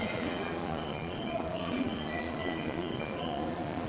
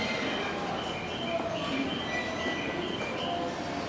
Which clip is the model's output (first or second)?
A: first